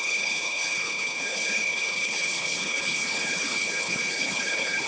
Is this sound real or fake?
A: fake